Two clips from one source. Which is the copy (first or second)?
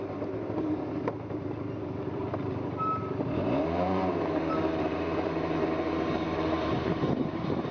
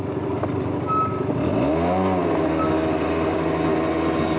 first